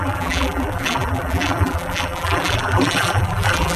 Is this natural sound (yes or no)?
no